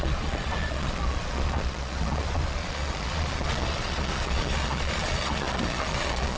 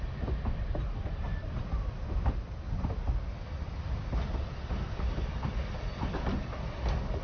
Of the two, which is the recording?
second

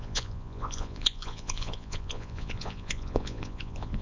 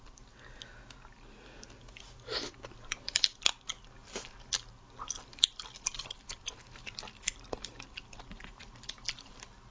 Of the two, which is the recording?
second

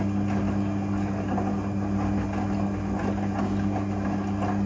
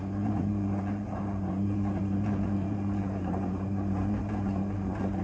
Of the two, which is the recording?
first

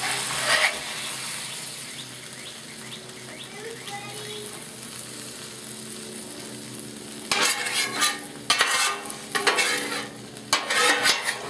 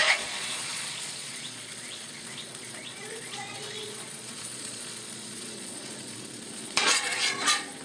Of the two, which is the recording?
first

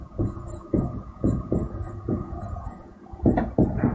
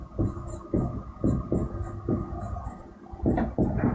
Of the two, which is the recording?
second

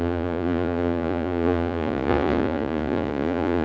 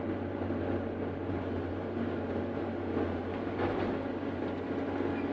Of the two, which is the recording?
second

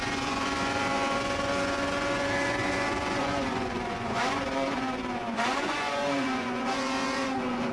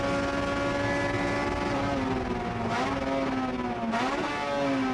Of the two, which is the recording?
second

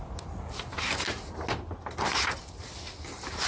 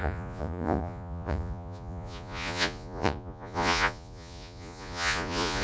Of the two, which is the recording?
first